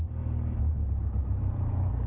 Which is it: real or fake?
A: real